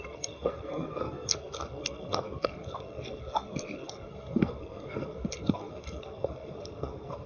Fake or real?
fake